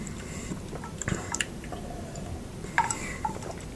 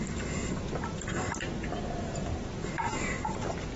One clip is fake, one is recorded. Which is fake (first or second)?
first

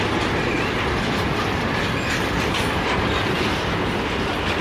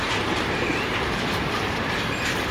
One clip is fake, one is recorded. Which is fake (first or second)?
second